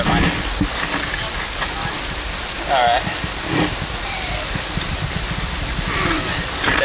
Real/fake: fake